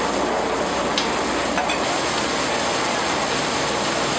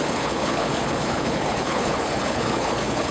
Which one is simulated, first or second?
second